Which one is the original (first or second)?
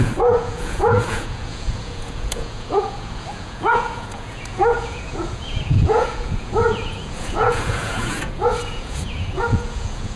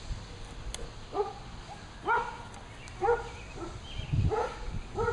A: second